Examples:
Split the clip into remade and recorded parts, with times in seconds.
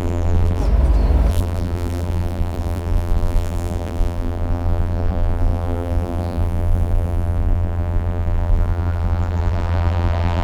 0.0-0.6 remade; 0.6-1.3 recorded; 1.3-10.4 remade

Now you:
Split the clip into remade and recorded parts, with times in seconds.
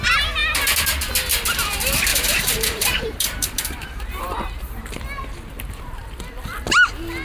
0.0-2.1 recorded; 2.1-5.0 remade; 5.0-7.2 recorded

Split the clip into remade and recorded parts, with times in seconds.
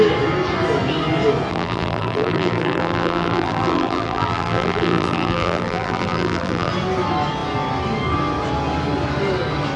0.0-1.5 recorded; 1.5-6.7 remade; 6.7-9.8 recorded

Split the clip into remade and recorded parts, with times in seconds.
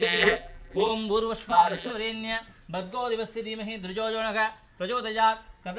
0.0-0.9 remade; 0.9-1.5 recorded; 1.5-1.9 remade; 1.9-5.8 recorded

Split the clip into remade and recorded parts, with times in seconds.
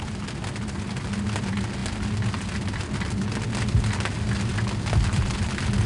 0.0-5.9 recorded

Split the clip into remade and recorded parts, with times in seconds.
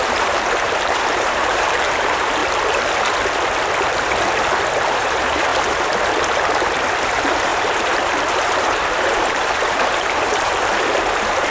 0.0-2.4 remade; 2.4-5.1 recorded; 5.1-5.5 remade; 5.5-7.0 recorded; 7.0-11.5 remade